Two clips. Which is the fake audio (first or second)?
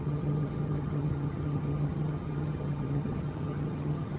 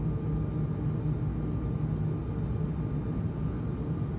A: first